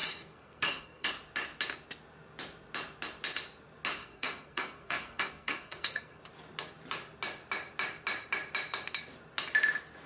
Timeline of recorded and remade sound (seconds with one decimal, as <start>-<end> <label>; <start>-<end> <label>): 0.0-1.1 remade; 1.1-4.0 recorded; 4.0-6.2 remade; 6.2-10.1 recorded

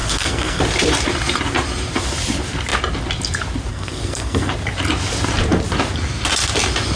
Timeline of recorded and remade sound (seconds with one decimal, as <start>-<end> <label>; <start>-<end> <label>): 0.0-0.6 remade; 0.6-3.7 recorded; 3.7-4.5 remade; 4.5-7.0 recorded

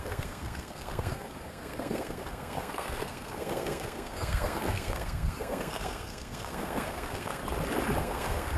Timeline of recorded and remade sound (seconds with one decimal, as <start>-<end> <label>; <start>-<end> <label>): 0.0-7.4 remade; 7.4-8.0 recorded; 8.0-8.6 remade

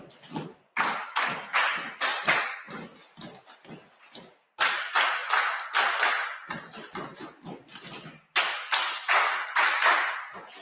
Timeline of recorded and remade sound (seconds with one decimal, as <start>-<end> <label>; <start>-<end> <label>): 0.0-10.6 recorded

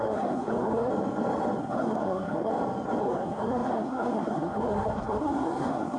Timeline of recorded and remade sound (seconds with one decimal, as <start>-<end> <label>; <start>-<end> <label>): 0.0-0.9 remade; 0.9-1.6 recorded; 1.6-2.5 remade; 2.5-3.0 recorded; 3.0-6.0 remade

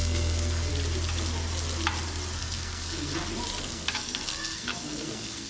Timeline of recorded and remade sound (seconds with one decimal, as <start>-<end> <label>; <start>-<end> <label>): 0.0-0.7 remade; 0.7-2.4 recorded; 2.4-3.1 remade; 3.1-3.6 recorded; 3.6-5.5 remade

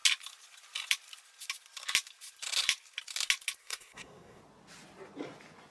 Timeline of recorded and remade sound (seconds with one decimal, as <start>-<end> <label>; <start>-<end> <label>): 0.0-3.6 recorded; 3.6-4.4 remade; 4.4-5.7 recorded

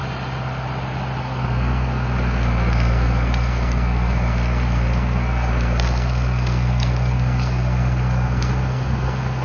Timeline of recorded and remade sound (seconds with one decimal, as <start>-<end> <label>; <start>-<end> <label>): 0.0-1.2 recorded; 1.2-9.4 remade